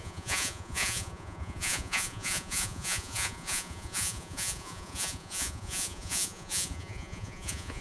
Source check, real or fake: fake